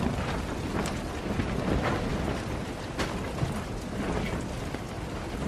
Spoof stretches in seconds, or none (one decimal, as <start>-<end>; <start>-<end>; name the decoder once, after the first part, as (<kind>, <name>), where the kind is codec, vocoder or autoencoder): none